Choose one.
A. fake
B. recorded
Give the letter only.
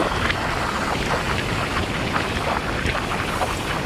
B